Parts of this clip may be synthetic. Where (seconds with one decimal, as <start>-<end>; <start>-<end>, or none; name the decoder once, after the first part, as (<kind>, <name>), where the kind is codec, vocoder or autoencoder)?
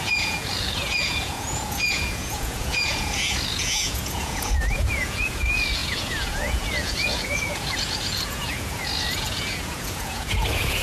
0.0-10.8 (vocoder, Vocos)